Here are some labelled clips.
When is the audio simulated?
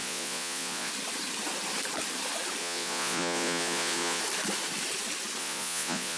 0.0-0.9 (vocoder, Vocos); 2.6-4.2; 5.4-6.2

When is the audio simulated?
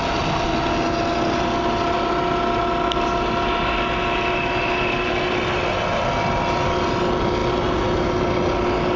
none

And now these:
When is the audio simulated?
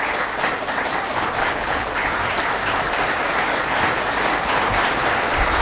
1.4-2.1 (codec, HILCodec)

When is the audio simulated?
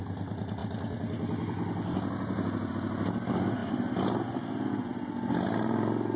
3.6-4.7 (vocoder, BigVGAN v2)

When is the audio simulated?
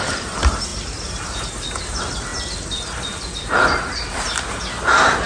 none